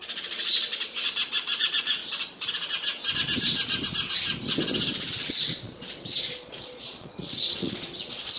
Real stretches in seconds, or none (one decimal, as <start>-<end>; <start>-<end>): 2.0-5.3